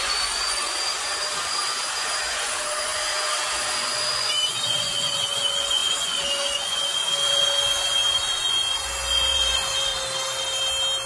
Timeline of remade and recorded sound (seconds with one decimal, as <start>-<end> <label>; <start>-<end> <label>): 0.0-9.9 remade; 9.9-11.1 recorded